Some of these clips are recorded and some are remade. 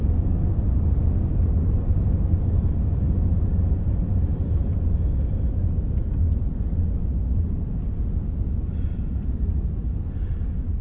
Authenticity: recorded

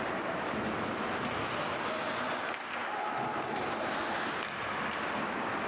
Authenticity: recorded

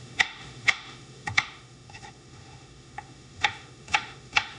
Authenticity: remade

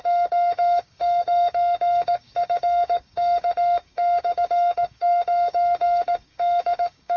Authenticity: remade